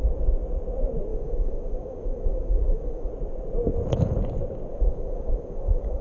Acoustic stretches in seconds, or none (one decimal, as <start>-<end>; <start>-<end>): 0.0-1.1; 3.1-4.7